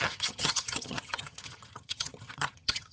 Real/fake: fake